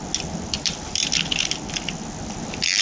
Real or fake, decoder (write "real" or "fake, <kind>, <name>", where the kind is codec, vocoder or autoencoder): real